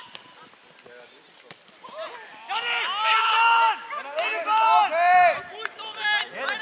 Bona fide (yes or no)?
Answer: yes